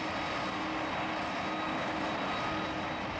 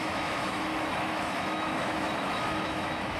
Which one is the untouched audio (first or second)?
first